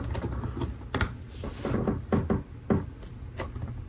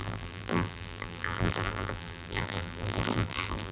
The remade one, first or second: second